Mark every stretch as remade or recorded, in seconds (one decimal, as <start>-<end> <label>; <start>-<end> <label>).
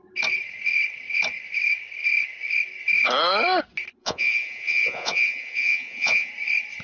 0.0-4.0 recorded; 4.0-6.3 remade; 6.3-6.8 recorded